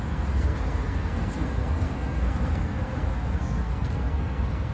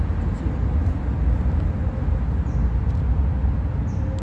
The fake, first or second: first